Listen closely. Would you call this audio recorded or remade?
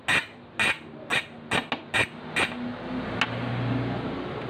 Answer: recorded